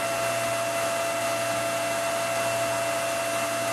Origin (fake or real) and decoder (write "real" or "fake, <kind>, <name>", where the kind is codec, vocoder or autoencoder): real